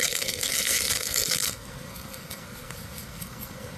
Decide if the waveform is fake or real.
fake